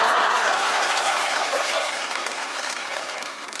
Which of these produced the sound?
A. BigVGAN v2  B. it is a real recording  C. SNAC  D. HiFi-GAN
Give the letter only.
C